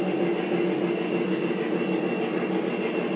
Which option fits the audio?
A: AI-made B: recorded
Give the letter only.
B